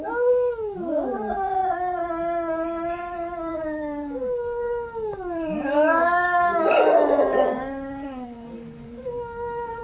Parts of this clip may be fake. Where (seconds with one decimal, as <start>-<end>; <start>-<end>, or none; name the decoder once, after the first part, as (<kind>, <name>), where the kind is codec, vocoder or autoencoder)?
0.0-1.6 (codec, DAC); 3.5-9.8